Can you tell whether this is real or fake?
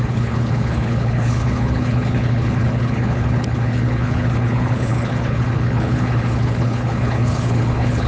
fake